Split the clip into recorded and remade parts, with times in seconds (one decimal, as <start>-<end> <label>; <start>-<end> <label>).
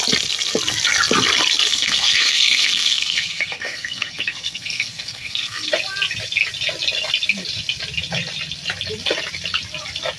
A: 0.0-1.7 recorded; 1.7-5.7 remade; 5.7-10.2 recorded